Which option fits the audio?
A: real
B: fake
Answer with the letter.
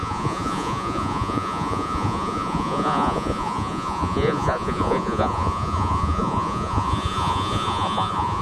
B